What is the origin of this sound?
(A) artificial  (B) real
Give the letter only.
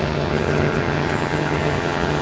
A